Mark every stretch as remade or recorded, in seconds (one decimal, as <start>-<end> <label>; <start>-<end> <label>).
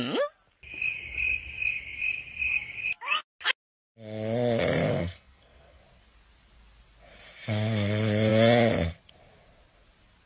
0.0-4.9 recorded; 4.9-5.8 remade; 5.8-10.3 recorded